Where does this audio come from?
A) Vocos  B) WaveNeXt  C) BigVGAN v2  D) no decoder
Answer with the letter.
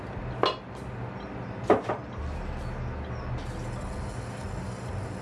D